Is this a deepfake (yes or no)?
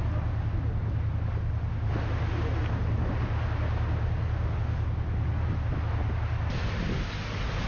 no